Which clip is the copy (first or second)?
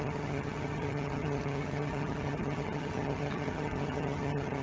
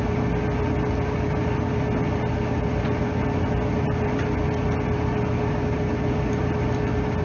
first